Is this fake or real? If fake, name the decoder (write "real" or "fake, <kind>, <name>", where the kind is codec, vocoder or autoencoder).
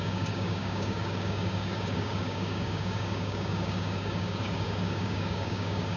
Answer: fake, codec, DAC